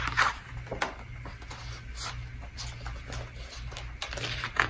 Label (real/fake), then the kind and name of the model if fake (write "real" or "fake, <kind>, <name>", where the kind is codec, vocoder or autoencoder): real